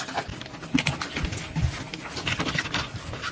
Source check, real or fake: real